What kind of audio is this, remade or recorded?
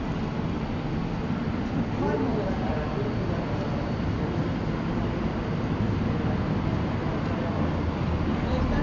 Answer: recorded